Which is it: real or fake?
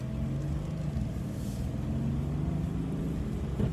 real